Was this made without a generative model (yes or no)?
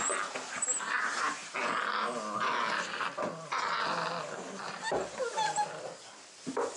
yes